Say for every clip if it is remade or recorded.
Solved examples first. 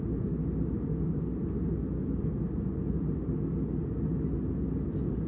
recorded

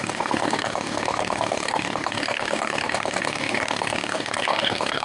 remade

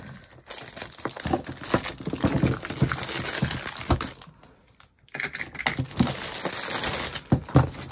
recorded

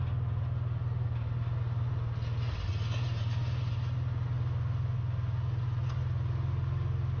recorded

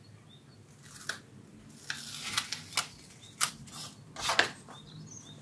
recorded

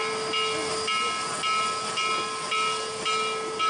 recorded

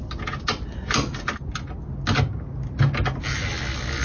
recorded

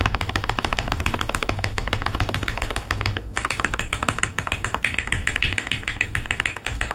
remade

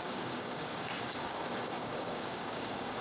remade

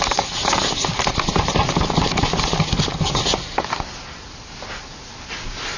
recorded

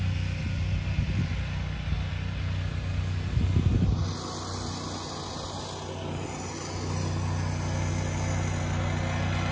recorded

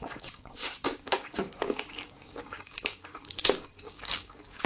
remade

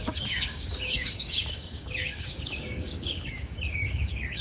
remade